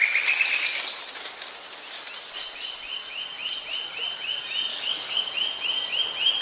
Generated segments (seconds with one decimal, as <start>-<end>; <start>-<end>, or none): 4.7-5.3